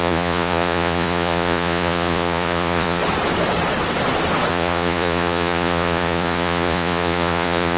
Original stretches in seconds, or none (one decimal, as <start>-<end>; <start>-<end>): 3.0-4.5